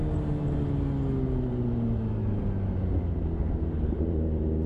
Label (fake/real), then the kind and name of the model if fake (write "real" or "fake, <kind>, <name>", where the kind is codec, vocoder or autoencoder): real